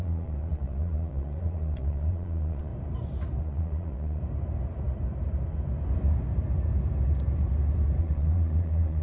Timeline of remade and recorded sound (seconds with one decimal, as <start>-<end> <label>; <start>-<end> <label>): 0.0-2.7 remade; 2.7-3.4 recorded; 3.4-4.2 remade; 4.2-8.0 recorded; 8.0-9.0 remade